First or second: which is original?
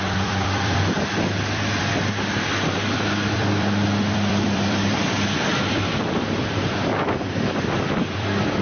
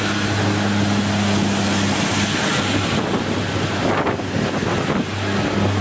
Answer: second